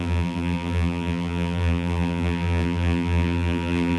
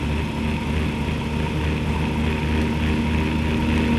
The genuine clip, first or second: second